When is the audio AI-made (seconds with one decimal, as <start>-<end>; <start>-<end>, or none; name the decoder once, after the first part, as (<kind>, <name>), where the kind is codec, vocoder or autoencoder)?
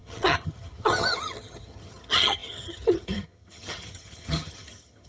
0.0-5.1 (vocoder, HiFi-GAN)